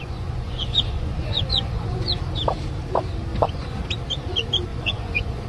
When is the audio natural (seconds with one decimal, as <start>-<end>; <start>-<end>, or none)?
2.2-3.3; 3.8-4.7